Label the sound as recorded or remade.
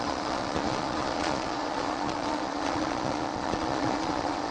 remade